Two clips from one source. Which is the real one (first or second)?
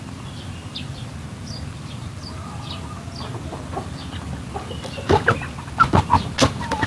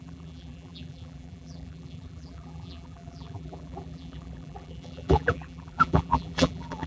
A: first